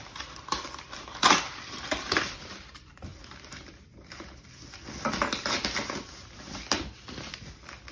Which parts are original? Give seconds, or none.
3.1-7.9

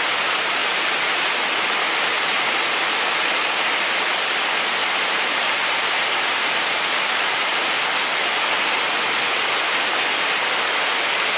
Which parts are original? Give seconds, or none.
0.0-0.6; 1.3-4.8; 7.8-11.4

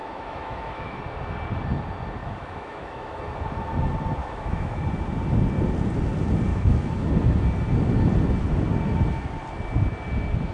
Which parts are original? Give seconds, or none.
1.0-2.2; 3.2-4.2; 4.8-6.5; 7.1-10.5

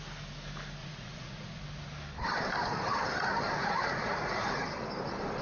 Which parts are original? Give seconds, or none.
0.0-0.8; 1.6-3.6; 4.6-5.4